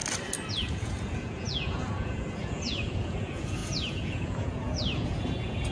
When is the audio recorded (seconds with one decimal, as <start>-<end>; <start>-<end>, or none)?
0.0-0.5

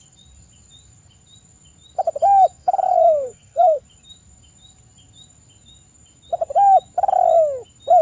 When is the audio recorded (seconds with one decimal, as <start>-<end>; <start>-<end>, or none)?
0.0-2.6; 3.8-8.0

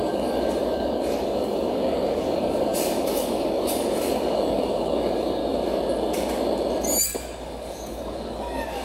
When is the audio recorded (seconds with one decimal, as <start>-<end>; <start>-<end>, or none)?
5.4-7.2

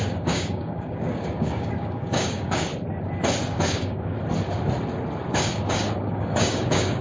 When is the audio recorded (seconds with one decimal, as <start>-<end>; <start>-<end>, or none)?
2.7-3.4; 4.1-5.5

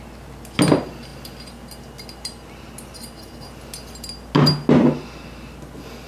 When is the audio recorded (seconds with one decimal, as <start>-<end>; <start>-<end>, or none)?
0.0-6.1

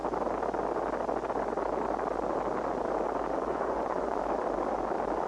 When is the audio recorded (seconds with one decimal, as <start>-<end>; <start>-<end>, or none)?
0.0-3.5; 4.2-5.3

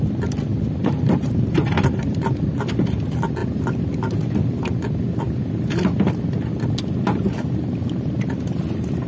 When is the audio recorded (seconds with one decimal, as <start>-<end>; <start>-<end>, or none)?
0.0-0.5; 2.6-9.1